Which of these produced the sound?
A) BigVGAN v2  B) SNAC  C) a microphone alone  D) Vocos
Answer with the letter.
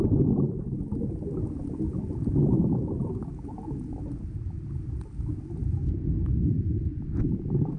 C